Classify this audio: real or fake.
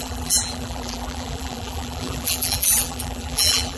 fake